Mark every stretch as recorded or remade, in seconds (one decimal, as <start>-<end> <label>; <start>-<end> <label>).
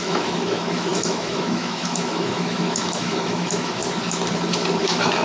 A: 0.0-3.8 remade; 3.8-4.8 recorded; 4.8-5.2 remade